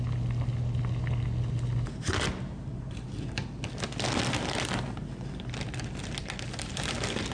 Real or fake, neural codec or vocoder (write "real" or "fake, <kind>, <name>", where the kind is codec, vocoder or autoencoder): real